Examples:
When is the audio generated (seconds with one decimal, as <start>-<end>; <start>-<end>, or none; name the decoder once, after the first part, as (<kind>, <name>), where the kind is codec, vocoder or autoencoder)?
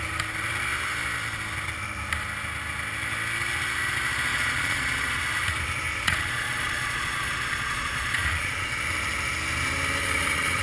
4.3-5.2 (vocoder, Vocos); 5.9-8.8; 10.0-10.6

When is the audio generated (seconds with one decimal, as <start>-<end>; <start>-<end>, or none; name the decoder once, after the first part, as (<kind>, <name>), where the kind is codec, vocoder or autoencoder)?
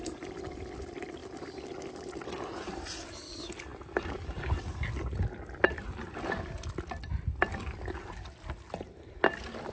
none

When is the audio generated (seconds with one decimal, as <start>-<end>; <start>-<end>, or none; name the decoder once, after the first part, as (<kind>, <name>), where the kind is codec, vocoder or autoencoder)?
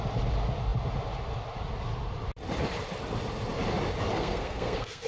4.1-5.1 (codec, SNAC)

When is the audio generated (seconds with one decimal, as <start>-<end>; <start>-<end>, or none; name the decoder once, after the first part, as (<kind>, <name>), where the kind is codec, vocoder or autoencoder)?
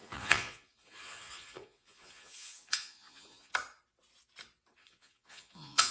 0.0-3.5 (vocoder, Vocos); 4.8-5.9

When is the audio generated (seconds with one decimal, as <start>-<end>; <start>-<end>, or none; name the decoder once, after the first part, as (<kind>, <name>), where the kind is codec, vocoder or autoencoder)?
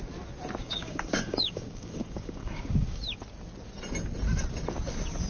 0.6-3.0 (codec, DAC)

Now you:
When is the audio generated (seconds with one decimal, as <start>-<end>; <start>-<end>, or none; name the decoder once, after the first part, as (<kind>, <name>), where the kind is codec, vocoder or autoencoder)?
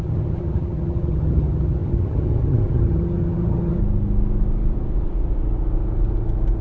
0.0-3.8 (vocoder, HiFi-GAN)